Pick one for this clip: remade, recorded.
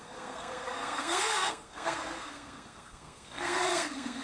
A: remade